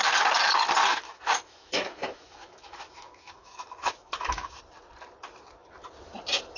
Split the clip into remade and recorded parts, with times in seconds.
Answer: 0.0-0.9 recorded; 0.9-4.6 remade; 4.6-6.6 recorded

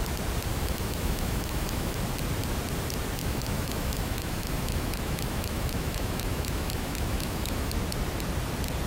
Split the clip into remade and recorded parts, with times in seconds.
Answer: 0.0-0.5 recorded; 0.5-2.0 remade; 2.0-3.2 recorded; 3.2-7.7 remade; 7.7-8.9 recorded